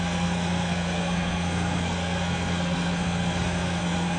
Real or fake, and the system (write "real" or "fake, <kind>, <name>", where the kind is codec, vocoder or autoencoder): fake, codec, SNAC